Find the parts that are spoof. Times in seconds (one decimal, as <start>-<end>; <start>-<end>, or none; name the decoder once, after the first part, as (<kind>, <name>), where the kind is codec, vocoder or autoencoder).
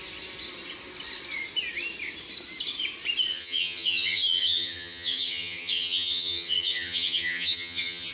3.3-8.1 (vocoder, HiFi-GAN)